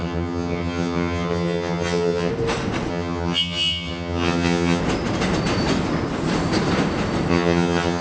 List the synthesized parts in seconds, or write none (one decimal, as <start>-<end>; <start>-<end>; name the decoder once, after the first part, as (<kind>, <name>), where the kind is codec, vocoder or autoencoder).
0.0-2.3 (vocoder, HiFi-GAN); 2.9-4.8; 7.3-8.0